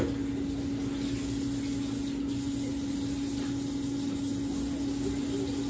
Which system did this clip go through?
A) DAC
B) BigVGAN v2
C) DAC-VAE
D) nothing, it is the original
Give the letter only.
D